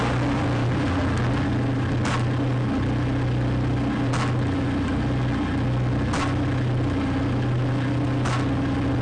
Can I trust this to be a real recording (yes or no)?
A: yes